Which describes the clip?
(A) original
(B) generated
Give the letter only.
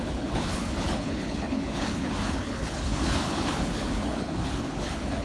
B